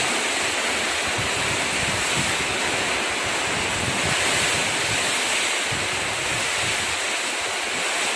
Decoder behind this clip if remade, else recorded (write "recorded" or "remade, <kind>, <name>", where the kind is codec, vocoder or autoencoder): recorded